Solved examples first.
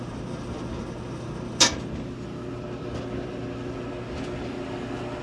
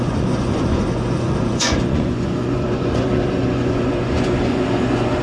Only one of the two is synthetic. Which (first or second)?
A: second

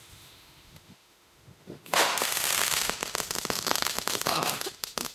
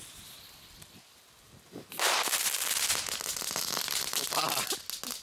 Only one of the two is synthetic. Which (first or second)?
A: first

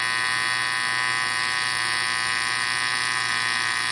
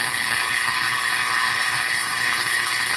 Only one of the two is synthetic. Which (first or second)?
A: second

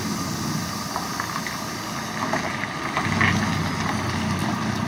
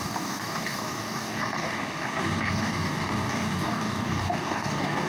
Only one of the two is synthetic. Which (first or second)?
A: second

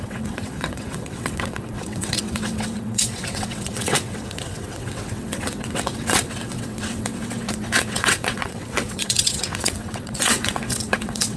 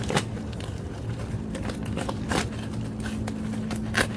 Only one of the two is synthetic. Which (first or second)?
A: first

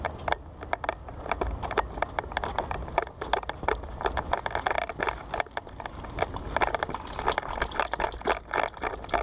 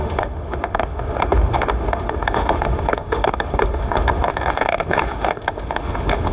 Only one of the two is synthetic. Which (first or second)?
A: second